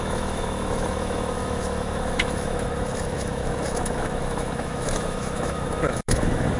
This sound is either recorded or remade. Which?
remade